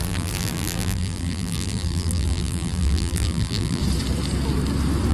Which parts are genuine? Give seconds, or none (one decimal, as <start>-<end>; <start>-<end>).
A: 3.8-5.1